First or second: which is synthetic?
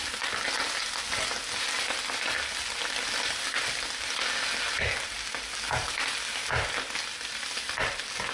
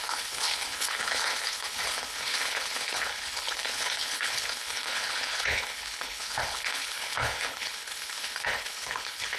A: second